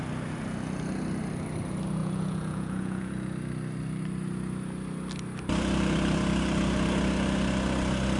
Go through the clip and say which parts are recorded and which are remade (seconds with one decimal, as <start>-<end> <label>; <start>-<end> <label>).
0.0-2.0 recorded; 2.0-3.1 remade; 3.1-8.2 recorded